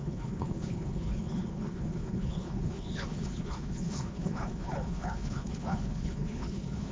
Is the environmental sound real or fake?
fake